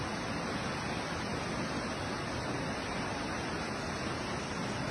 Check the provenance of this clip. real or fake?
real